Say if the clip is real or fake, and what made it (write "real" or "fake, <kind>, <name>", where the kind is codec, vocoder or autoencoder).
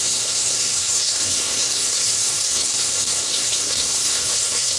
fake, codec, SNAC